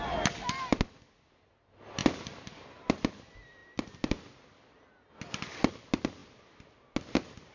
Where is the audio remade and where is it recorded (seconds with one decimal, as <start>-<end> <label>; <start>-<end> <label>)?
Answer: 0.0-7.5 recorded